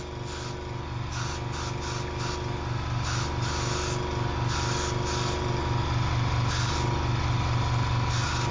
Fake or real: real